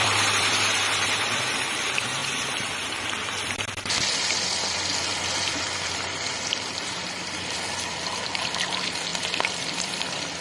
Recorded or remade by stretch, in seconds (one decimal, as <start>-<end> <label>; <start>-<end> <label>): 0.0-10.4 remade